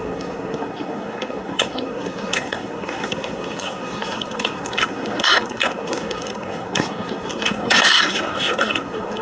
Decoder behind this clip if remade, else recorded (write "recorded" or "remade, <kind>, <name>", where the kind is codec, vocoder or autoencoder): remade, codec, SNAC